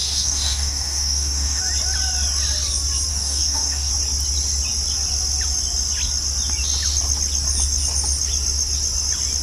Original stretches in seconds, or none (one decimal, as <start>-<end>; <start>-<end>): 1.6-3.1; 3.9-9.4